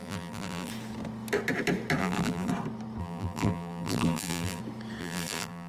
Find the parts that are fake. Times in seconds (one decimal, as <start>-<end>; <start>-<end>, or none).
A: 0.0-0.7; 2.0-2.5; 3.0-4.6; 5.0-5.7